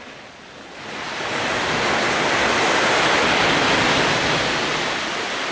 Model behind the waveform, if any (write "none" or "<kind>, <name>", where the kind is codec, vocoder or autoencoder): none